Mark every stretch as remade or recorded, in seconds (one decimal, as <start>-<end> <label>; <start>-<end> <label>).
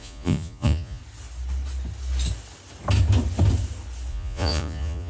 0.0-1.0 remade; 1.0-4.1 recorded; 4.1-5.1 remade